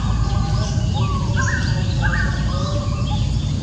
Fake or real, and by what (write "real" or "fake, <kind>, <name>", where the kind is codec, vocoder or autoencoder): real